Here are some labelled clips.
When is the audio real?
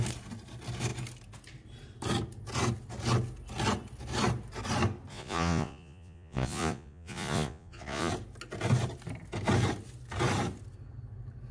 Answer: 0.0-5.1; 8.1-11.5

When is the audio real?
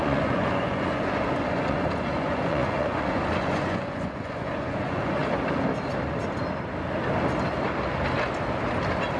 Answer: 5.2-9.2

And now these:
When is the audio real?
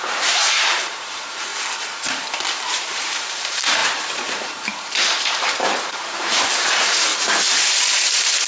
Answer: 1.5-2.5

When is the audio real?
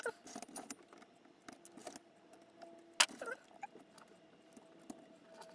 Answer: 0.0-5.5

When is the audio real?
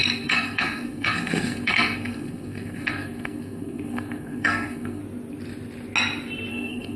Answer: 5.0-6.5